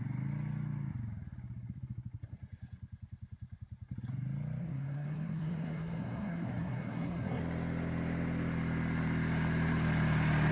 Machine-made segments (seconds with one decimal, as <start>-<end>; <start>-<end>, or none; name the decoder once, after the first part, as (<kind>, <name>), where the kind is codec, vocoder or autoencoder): 4.6-7.4 (codec, SNAC)